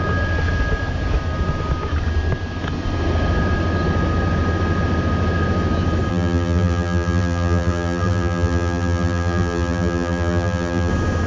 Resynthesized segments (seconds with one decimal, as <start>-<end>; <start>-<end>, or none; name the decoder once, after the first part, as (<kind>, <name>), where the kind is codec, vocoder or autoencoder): 6.1-10.9 (vocoder, BigVGAN v2)